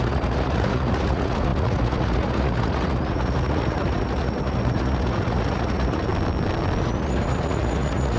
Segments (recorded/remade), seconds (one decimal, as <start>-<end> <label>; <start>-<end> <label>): 0.0-6.1 remade; 6.1-6.8 recorded; 6.8-8.2 remade